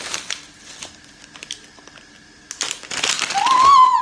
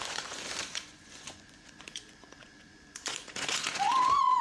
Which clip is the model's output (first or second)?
second